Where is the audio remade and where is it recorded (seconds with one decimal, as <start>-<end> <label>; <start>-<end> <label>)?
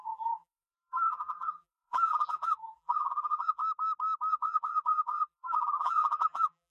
0.0-3.6 remade; 3.6-4.3 recorded; 4.3-6.7 remade